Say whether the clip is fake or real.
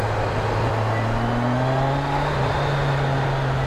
real